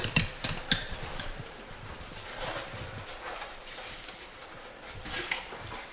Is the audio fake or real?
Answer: real